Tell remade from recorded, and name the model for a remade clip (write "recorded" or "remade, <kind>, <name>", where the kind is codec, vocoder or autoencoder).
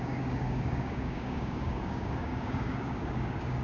remade, codec, DAC